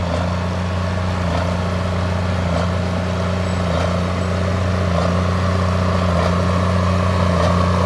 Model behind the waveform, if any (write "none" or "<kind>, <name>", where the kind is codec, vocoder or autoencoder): none